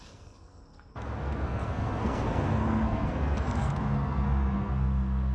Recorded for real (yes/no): no